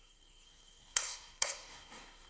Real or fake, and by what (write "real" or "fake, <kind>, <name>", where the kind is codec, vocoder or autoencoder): fake, codec, SNAC